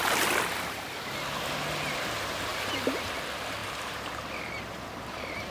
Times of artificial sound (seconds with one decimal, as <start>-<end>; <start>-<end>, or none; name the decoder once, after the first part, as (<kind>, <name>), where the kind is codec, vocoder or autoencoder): 2.5-3.1 (vocoder, BigVGAN v2); 3.6-5.5